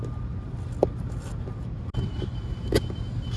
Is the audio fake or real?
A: real